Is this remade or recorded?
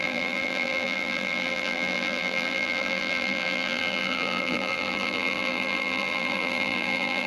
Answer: remade